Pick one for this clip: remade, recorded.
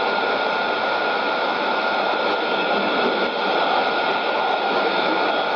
recorded